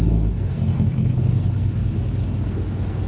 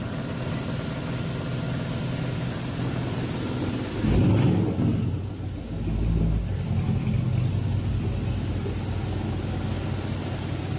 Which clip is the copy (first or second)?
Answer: first